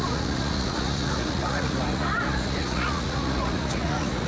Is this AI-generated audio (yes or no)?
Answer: yes